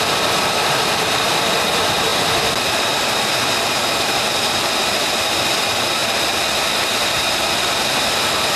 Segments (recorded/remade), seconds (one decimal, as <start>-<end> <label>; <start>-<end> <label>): 0.0-8.6 remade